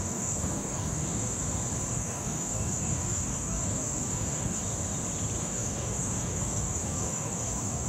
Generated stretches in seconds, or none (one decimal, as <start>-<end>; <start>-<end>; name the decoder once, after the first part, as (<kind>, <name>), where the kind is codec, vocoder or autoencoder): 0.0-1.4 (codec, DAC); 1.9-4.6; 5.4-7.9